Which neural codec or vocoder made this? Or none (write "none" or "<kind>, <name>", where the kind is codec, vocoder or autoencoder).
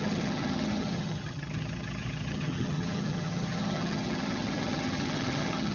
vocoder, HiFi-GAN